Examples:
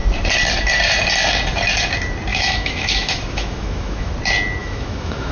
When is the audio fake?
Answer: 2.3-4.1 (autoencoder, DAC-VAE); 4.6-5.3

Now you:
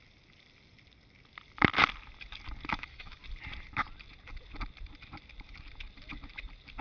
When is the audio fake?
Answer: 2.7-3.2 (autoencoder, DAC-VAE)

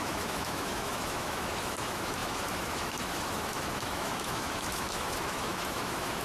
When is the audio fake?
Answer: 0.0-6.2 (autoencoder, DAC-VAE)

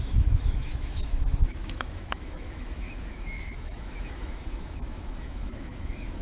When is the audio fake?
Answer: 0.0-6.2 (autoencoder, DAC-VAE)

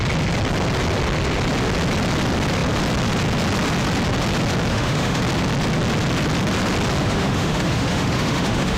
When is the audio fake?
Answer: 4.7-5.2 (autoencoder, DAC-VAE); 7.0-8.8